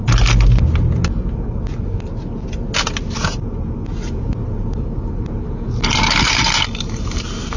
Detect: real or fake real